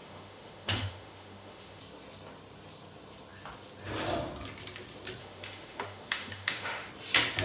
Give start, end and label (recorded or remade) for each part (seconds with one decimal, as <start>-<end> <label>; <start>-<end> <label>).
0.0-1.8 remade; 1.8-5.2 recorded; 5.2-6.9 remade; 6.9-7.4 recorded